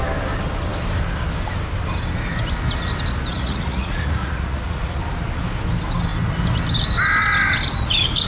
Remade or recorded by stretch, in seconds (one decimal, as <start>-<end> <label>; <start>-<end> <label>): 0.0-3.3 recorded; 3.3-5.0 remade; 5.0-8.3 recorded